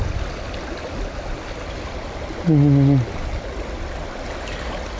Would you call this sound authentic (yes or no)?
yes